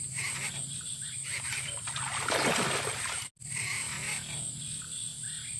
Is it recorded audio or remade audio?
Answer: recorded